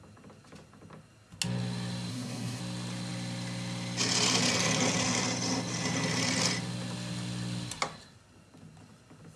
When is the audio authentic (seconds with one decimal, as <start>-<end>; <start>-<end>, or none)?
0.0-2.1; 2.6-9.4